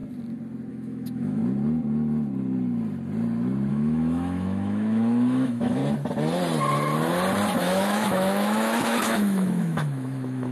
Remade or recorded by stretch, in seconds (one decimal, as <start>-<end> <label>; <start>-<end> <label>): 0.0-0.7 recorded; 0.7-1.4 remade; 1.4-3.7 recorded; 3.7-5.8 remade; 5.8-7.6 recorded; 7.6-10.5 remade

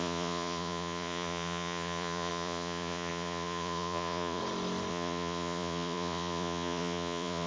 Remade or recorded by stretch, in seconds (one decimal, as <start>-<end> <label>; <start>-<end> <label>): 0.0-4.4 remade; 4.4-4.9 recorded; 4.9-7.5 remade

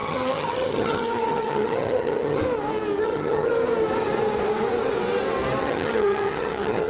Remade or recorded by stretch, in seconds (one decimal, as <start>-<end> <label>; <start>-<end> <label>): 0.0-2.4 remade; 2.4-3.0 recorded; 3.0-3.5 remade; 3.5-5.6 recorded; 5.6-6.9 remade

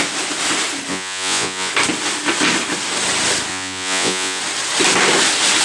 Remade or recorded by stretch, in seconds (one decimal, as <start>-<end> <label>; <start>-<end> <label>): 0.0-0.9 recorded; 0.9-1.7 remade; 1.7-3.5 recorded; 3.5-4.4 remade; 4.4-5.6 recorded

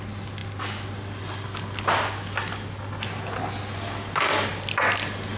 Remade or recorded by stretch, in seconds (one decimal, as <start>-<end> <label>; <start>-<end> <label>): 0.0-5.4 recorded

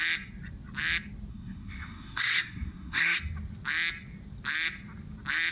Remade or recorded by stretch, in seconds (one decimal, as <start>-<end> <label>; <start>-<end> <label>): 0.0-1.3 recorded; 1.3-3.2 remade; 3.2-5.5 recorded